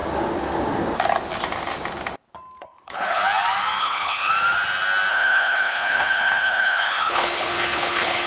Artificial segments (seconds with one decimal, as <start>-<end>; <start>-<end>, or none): 2.6-3.2; 3.8-4.3; 5.1-8.3